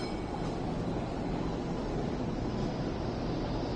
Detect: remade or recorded recorded